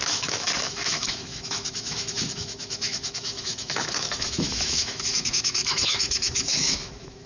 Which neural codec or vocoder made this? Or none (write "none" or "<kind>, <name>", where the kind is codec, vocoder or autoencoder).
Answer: autoencoder, DAC-VAE